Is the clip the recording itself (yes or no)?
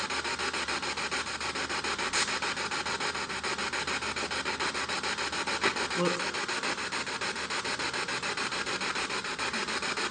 yes